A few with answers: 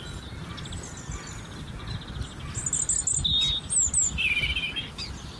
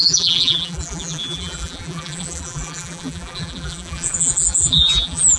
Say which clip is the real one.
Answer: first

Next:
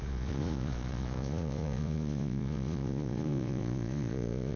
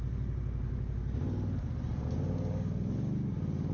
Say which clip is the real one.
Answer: second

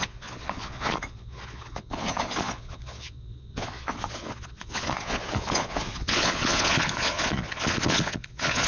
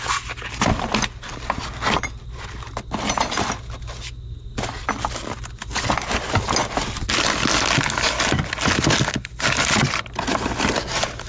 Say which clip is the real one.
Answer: second